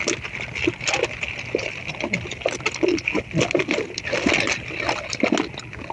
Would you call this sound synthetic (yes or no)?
no